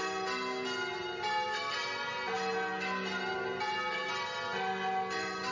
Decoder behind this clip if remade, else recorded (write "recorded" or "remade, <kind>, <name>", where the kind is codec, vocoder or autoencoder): recorded